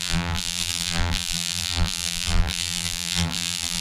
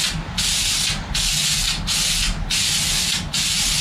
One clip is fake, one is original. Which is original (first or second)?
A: second